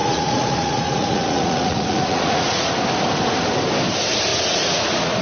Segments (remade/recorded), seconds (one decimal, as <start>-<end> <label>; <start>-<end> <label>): 0.0-2.7 remade; 2.7-4.3 recorded; 4.3-5.2 remade